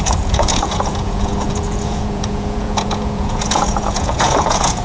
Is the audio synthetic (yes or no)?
yes